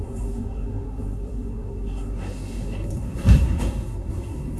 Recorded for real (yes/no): no